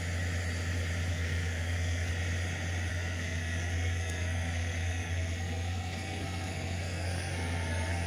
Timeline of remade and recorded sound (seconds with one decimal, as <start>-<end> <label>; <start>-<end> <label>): 0.0-1.1 recorded; 1.1-2.1 remade; 2.1-2.9 recorded; 2.9-8.1 remade